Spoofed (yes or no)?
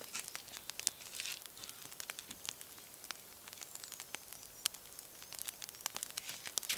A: no